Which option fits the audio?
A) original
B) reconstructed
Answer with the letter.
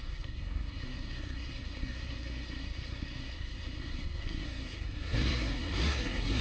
B